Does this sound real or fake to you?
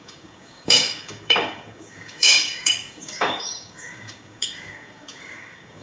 fake